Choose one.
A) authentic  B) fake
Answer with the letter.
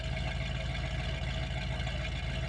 A